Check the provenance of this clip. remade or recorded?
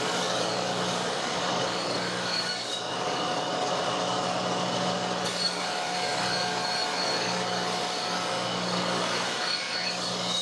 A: remade